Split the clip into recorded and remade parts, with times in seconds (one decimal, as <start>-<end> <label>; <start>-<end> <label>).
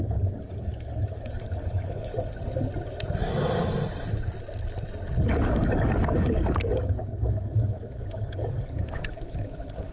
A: 0.0-2.1 remade; 2.1-5.5 recorded; 5.5-9.9 remade